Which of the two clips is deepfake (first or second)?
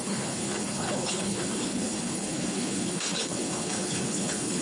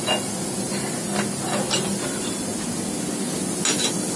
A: first